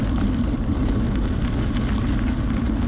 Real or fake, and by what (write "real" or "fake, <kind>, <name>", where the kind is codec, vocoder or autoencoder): real